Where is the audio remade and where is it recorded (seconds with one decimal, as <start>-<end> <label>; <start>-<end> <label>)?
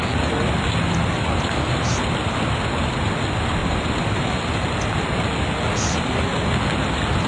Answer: 0.0-3.6 recorded; 3.6-4.2 remade; 4.2-7.3 recorded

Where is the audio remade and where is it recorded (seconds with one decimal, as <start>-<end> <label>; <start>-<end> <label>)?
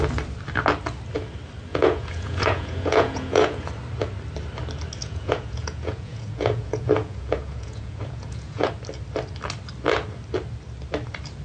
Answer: 0.0-1.7 recorded; 1.7-3.7 remade; 3.7-5.0 recorded; 5.0-8.7 remade; 8.7-11.4 recorded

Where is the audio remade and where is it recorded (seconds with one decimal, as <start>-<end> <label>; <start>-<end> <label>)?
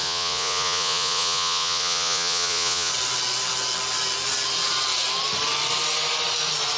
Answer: 0.0-2.9 remade; 2.9-6.8 recorded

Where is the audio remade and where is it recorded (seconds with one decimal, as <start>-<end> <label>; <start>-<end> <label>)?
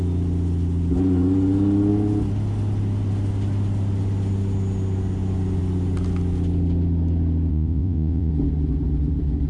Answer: 0.0-7.5 recorded; 7.5-8.3 remade; 8.3-9.5 recorded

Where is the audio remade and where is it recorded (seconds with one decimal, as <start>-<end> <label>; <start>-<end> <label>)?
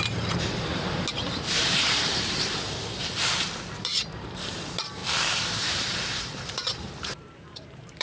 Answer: 0.0-8.0 remade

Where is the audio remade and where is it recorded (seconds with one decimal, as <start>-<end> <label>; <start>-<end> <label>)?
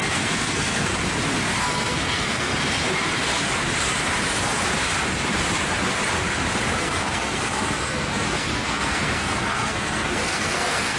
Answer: 0.0-0.9 remade; 0.9-1.6 recorded; 1.6-2.5 remade; 2.5-6.8 recorded; 6.8-11.0 remade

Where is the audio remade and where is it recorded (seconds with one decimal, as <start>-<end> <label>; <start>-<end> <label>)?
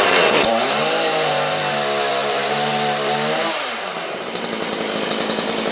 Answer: 0.0-0.5 recorded; 0.5-1.6 remade; 1.6-2.1 recorded; 2.1-4.4 remade; 4.4-5.7 recorded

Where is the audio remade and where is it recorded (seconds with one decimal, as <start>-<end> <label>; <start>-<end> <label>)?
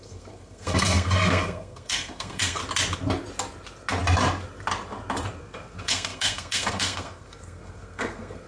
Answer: 0.0-2.6 remade; 2.6-5.4 recorded; 5.4-8.5 remade